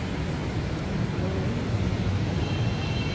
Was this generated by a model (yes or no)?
no